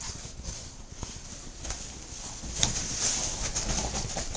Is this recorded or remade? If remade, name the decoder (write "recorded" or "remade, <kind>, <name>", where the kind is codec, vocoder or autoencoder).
recorded